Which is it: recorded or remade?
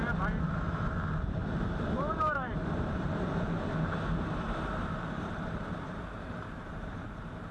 remade